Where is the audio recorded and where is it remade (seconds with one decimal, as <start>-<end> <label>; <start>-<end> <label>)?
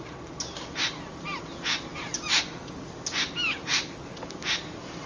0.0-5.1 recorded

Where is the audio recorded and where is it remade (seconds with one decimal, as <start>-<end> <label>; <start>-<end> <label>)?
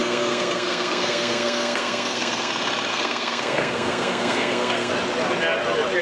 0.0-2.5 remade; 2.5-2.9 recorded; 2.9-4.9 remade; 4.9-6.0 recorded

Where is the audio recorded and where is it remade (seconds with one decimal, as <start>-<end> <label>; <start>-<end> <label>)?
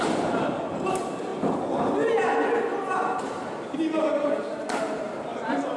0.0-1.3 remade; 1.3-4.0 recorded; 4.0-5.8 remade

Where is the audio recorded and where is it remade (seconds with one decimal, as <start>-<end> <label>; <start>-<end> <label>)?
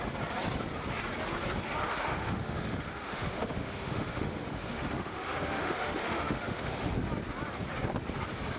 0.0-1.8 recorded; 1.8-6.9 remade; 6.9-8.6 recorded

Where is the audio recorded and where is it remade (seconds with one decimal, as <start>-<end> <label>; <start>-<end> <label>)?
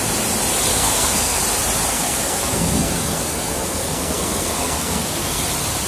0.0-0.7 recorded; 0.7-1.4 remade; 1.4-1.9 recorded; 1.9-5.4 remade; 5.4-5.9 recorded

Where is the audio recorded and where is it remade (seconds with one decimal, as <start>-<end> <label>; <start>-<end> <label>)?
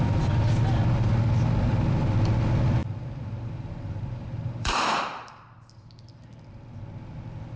0.0-2.8 recorded; 2.8-5.7 remade; 5.7-7.6 recorded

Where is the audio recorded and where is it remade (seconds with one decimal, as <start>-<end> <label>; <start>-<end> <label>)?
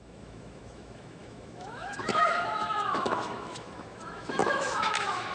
0.0-5.3 remade